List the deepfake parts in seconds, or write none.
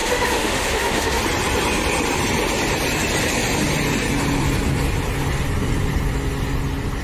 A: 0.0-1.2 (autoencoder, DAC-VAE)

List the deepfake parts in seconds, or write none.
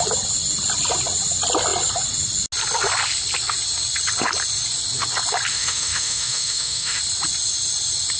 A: 5.5-7.0 (autoencoder, DAC-VAE)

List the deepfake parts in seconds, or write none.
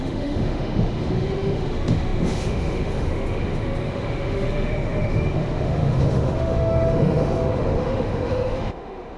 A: 0.0-9.2 (autoencoder, DAC-VAE)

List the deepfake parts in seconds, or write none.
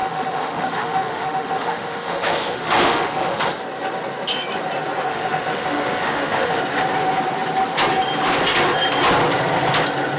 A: 0.0-3.5 (autoencoder, DAC-VAE); 5.1-6.6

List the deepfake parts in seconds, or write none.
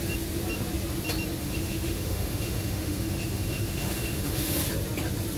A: 1.4-4.6 (autoencoder, DAC-VAE)